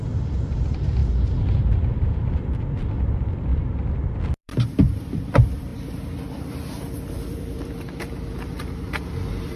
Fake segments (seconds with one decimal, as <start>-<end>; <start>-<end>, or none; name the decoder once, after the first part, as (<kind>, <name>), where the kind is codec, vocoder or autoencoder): 0.0-3.5 (vocoder, BigVGAN v2); 4.2-9.6

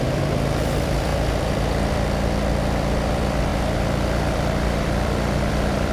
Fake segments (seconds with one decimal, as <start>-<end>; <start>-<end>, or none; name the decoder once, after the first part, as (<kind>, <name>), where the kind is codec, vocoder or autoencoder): 0.0-5.9 (vocoder, BigVGAN v2)

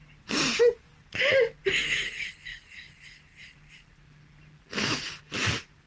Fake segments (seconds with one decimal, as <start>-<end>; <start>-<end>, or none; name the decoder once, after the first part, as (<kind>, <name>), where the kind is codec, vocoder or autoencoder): 3.3-5.2 (vocoder, BigVGAN v2)

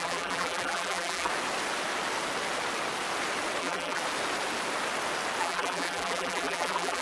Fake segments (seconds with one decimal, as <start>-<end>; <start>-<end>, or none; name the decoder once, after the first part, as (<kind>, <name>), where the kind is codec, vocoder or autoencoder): 0.0-1.3 (vocoder, BigVGAN v2); 3.6-4.0; 5.4-7.0

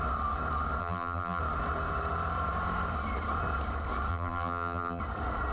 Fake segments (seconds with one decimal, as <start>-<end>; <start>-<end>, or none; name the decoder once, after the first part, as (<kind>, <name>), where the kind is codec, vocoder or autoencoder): 0.8-1.4 (vocoder, BigVGAN v2); 4.1-5.0

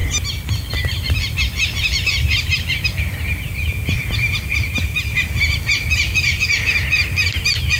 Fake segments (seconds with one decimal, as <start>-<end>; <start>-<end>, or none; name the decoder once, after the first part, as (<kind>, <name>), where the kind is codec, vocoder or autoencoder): 0.7-6.3 (vocoder, BigVGAN v2); 6.9-7.8